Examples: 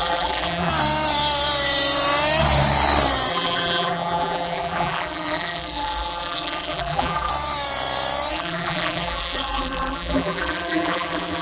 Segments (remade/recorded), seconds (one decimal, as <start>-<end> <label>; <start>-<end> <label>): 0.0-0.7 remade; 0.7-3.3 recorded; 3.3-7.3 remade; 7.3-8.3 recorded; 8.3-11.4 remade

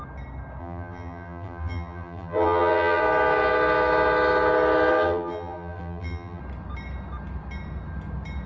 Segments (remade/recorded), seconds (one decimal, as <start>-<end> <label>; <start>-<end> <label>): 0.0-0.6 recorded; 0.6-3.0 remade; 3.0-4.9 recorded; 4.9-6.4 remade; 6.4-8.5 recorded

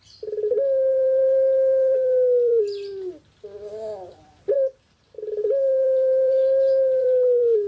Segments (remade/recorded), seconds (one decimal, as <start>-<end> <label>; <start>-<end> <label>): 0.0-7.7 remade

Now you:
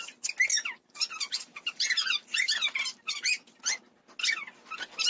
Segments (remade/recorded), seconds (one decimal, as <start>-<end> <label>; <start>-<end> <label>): 0.0-0.5 recorded; 0.5-3.6 remade; 3.6-5.1 recorded

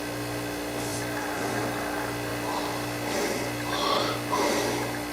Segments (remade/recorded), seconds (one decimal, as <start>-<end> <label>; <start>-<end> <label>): 0.0-0.9 recorded; 0.9-1.6 remade; 1.6-5.1 recorded